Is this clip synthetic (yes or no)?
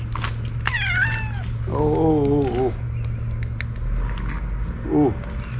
no